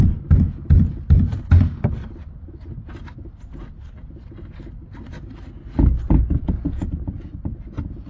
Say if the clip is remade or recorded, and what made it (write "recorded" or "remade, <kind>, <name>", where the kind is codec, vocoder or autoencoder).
recorded